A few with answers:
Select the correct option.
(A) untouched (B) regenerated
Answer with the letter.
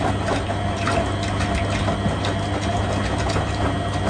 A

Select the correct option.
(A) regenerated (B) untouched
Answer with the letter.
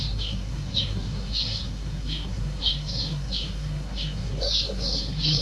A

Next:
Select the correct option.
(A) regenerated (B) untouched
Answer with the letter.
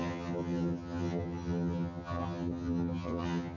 A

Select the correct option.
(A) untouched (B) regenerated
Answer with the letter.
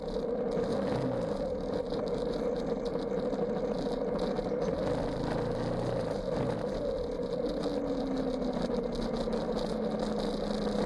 A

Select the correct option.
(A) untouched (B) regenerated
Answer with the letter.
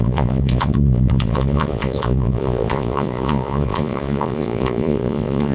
B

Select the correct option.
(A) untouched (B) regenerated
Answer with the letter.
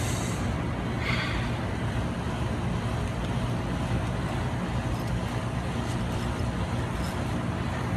A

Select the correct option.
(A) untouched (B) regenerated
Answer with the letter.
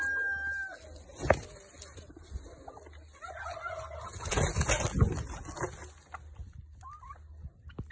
A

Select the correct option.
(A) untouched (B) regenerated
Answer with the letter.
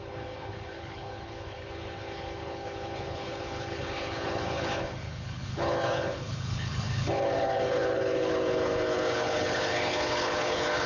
B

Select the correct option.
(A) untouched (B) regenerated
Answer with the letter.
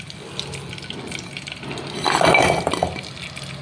A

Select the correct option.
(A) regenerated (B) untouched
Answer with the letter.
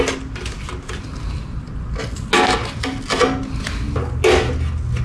B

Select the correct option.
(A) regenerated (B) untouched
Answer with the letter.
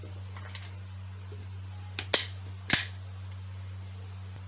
B